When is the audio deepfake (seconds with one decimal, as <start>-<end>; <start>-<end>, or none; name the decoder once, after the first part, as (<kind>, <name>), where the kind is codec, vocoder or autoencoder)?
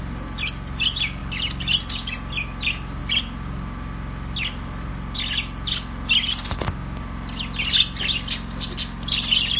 none